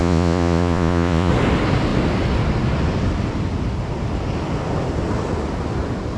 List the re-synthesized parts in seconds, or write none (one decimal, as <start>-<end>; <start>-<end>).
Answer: 0.0-1.3